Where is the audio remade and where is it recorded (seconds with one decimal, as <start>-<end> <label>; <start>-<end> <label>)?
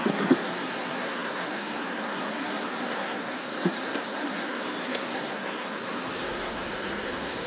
0.0-7.5 remade